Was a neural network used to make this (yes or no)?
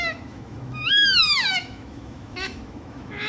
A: yes